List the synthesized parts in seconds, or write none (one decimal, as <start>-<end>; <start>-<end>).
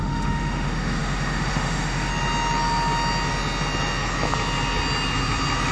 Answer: 0.0-2.1